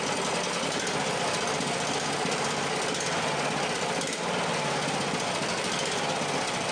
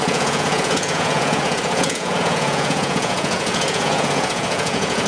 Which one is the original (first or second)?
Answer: first